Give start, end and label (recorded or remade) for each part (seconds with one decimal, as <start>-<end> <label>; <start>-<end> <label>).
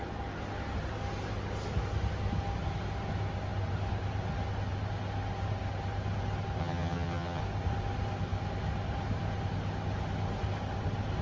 0.0-6.6 recorded; 6.6-7.4 remade; 7.4-11.2 recorded